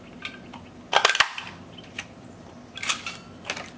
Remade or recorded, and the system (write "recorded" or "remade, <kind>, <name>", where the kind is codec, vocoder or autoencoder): recorded